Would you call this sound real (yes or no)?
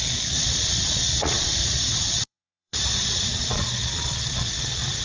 no